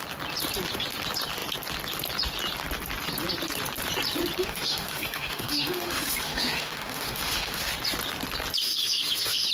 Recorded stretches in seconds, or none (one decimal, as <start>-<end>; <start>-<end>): 0.0-4.4; 7.7-8.6